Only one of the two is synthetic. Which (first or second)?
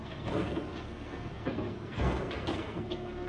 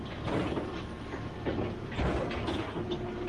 first